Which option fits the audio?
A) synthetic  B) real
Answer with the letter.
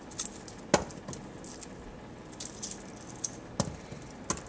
B